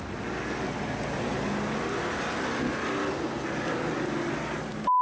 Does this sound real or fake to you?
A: real